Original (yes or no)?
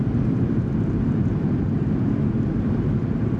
yes